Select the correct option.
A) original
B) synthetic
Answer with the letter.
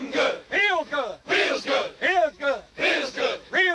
B